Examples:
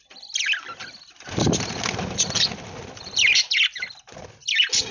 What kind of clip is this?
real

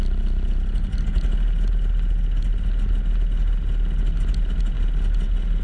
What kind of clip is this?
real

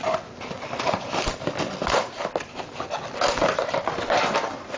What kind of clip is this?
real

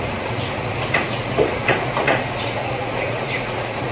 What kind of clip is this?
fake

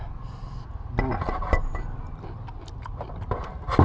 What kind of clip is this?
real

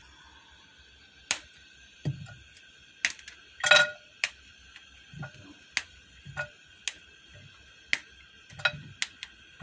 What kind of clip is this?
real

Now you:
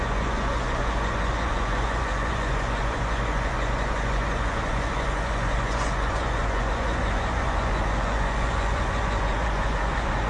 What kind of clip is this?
fake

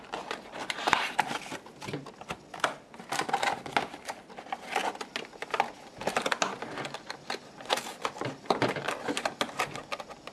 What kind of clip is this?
real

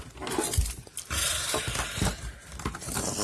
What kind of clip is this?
real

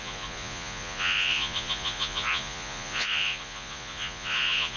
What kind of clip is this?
fake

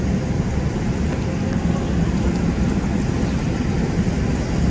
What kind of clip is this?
real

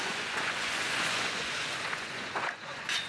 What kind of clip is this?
fake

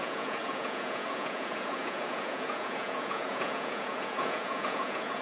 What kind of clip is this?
fake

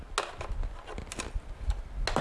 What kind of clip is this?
real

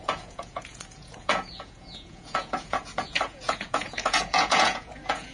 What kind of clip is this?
fake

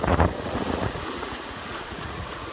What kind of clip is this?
fake